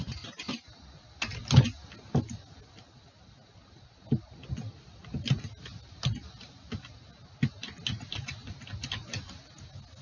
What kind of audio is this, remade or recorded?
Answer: recorded